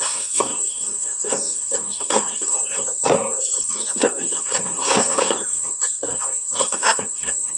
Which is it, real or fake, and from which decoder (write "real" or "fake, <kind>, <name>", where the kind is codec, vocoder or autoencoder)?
fake, codec, SNAC